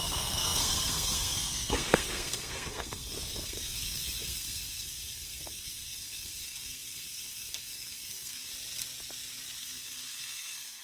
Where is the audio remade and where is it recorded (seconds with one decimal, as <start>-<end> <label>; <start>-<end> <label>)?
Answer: 0.0-8.5 remade; 8.5-9.6 recorded; 9.6-10.8 remade